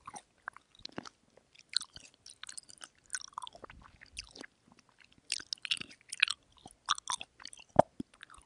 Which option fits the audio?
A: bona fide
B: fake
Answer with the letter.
A